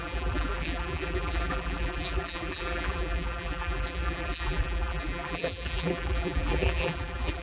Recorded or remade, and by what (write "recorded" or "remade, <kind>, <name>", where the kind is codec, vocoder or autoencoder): remade, vocoder, BigVGAN v2